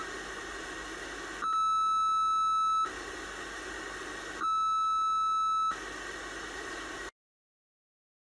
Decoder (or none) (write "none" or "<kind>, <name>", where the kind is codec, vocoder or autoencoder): none